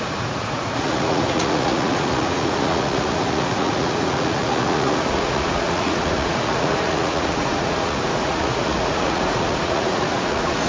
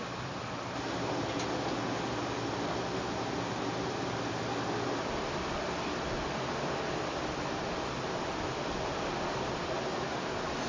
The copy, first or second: first